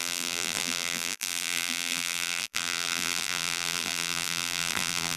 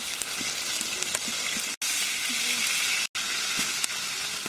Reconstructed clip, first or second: first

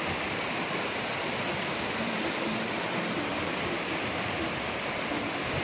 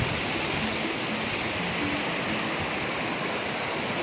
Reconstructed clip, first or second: first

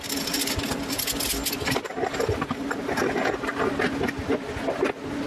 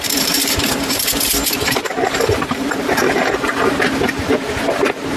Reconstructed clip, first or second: second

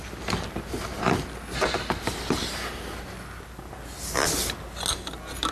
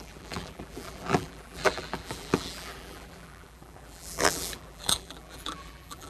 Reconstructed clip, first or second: second